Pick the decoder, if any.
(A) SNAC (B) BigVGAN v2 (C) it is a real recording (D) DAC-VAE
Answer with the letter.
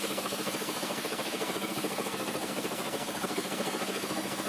A